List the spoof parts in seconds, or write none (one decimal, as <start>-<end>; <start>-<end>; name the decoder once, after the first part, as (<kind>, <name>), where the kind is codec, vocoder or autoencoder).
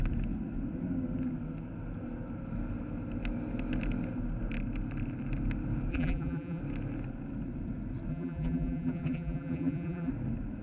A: 5.9-6.6 (vocoder, BigVGAN v2); 8.1-10.1